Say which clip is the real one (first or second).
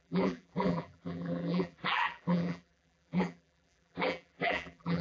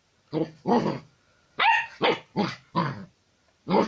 second